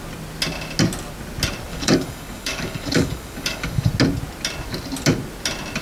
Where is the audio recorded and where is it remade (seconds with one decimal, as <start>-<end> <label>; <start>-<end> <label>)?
0.0-1.7 recorded; 1.7-3.9 remade; 3.9-5.8 recorded